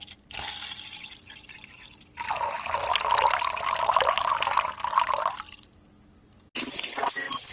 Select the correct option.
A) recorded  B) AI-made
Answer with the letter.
A